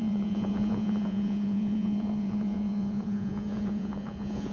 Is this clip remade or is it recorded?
remade